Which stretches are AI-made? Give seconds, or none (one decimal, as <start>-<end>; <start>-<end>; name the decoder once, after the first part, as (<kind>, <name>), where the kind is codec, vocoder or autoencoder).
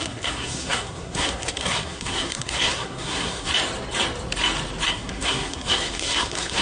0.0-3.5 (codec, SNAC); 4.9-6.6